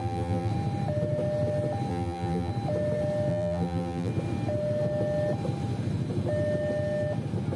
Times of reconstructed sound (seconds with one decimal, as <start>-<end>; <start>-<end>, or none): 0.0-0.5; 1.9-2.5; 3.3-4.1